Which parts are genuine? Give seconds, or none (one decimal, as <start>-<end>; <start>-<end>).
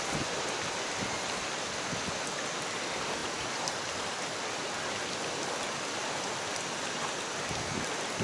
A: 0.0-3.2; 3.7-8.2